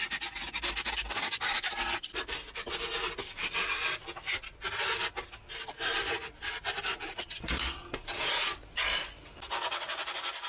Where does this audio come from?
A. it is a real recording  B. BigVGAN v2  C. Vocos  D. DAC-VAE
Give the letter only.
A